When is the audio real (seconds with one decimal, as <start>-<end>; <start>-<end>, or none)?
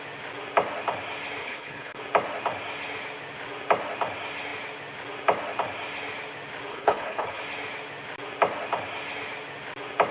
0.0-1.4; 2.0-6.7; 7.4-10.1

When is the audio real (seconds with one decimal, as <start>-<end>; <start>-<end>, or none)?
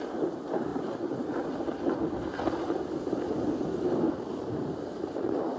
0.7-4.1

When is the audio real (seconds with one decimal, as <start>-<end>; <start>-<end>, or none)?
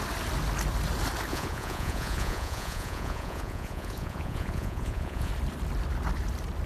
0.0-1.3; 5.3-6.7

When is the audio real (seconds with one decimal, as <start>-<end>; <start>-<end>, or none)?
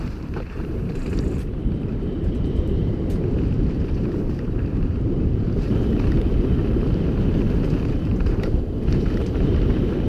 6.6-7.4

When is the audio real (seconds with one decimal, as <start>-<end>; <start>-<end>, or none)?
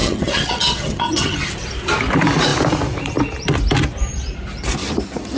1.5-5.4